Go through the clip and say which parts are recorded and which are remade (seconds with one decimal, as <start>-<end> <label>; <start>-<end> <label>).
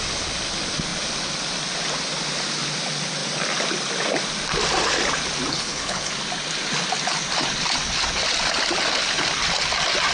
0.0-5.5 recorded; 5.5-6.1 remade; 6.1-10.1 recorded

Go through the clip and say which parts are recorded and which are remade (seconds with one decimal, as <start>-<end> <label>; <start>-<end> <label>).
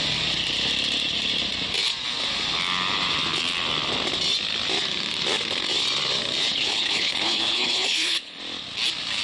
0.0-6.5 recorded; 6.5-8.4 remade; 8.4-9.2 recorded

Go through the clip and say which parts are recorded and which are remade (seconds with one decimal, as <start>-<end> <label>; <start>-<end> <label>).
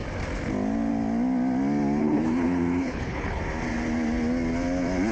0.0-2.0 recorded; 2.0-3.4 remade; 3.4-5.1 recorded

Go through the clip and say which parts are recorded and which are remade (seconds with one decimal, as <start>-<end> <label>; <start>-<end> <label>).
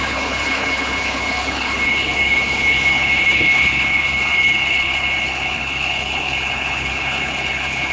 0.0-7.9 remade